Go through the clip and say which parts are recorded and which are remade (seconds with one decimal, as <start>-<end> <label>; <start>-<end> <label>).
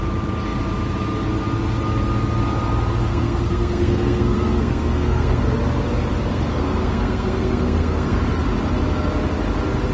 0.0-3.1 recorded; 3.1-5.4 remade; 5.4-6.3 recorded; 6.3-8.2 remade; 8.2-9.9 recorded